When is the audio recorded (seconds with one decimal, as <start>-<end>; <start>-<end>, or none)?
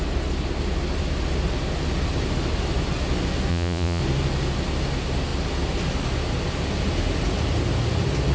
0.0-3.5; 4.0-8.3